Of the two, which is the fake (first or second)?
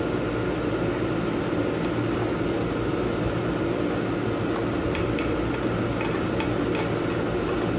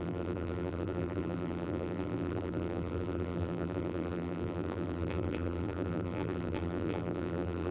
second